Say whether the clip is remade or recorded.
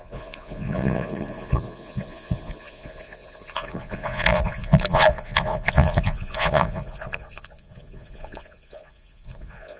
remade